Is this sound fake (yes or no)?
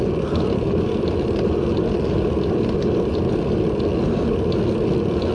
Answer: no